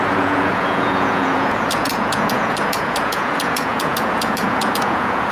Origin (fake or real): fake